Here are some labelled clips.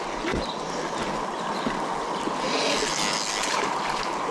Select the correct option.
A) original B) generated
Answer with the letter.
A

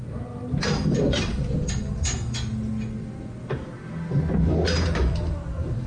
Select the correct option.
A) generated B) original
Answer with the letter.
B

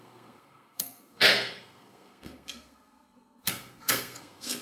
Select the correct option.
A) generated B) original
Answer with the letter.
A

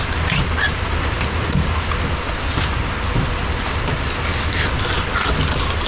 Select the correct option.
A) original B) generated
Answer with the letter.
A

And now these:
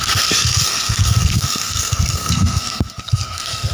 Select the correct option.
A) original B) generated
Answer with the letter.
B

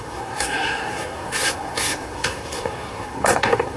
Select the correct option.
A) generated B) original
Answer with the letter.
A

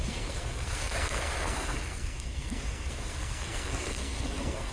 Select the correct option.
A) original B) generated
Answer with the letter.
B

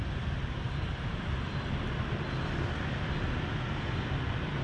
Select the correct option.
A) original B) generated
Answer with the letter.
A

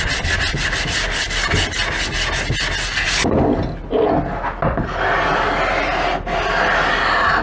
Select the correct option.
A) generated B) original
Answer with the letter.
B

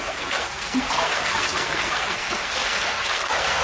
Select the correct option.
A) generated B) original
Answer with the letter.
A